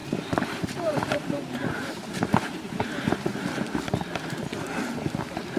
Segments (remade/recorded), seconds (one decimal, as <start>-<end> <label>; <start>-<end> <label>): 0.0-3.4 remade; 3.4-5.6 recorded